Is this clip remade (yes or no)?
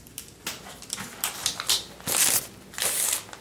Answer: no